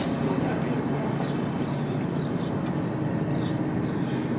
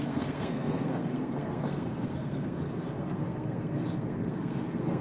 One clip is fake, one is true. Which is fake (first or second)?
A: second